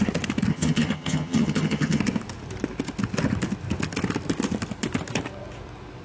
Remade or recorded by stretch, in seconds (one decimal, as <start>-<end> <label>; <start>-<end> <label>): 0.0-0.5 recorded; 0.5-2.0 remade; 2.0-6.0 recorded